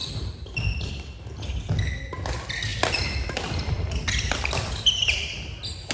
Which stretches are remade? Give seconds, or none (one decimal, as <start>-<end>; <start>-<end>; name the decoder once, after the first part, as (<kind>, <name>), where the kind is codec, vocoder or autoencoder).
0.0-0.9 (vocoder, BigVGAN v2); 2.7-5.9